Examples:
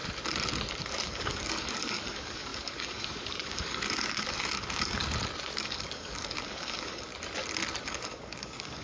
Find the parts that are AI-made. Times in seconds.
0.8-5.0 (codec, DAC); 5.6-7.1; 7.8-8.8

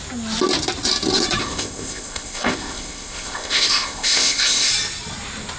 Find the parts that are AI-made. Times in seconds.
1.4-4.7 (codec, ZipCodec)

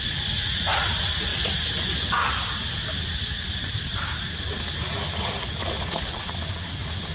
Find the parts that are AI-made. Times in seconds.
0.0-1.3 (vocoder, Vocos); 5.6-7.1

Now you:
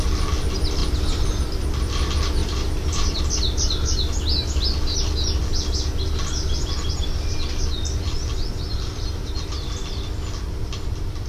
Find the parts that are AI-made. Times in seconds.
2.4-3.2 (vocoder, BigVGAN v2)